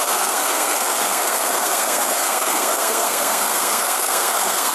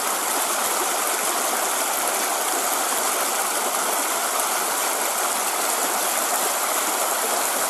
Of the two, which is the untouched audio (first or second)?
second